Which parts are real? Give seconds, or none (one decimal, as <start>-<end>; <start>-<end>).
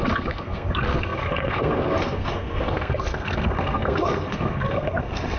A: none